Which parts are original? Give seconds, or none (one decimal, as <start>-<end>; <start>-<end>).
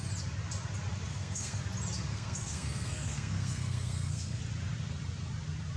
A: 0.0-1.1; 1.6-2.1; 4.4-5.8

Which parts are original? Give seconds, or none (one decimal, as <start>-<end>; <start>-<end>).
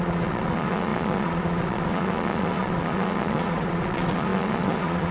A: none